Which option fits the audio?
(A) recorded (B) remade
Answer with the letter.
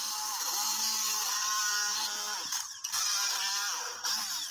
B